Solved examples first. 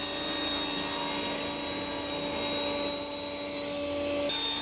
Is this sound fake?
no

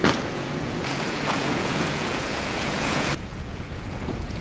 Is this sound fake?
yes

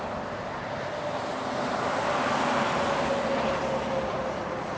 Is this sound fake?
no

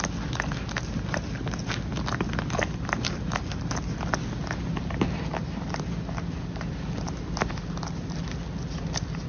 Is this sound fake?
no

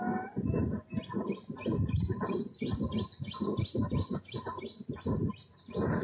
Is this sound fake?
no